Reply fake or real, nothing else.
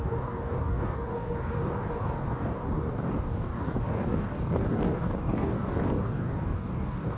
fake